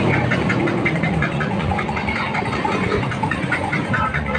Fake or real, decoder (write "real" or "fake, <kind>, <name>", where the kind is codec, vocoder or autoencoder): fake, vocoder, Vocos